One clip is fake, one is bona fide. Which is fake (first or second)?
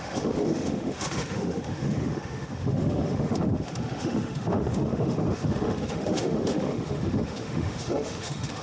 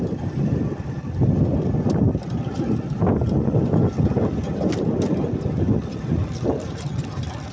first